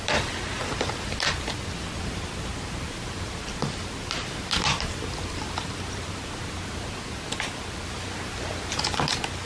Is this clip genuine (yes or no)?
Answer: yes